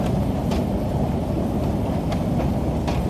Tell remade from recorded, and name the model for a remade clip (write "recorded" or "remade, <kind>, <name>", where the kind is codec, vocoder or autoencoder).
recorded